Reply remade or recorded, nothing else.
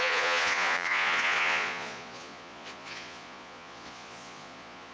remade